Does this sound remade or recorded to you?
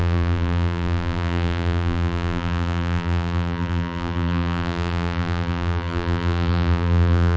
remade